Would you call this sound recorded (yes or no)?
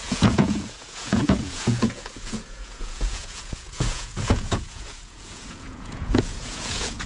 no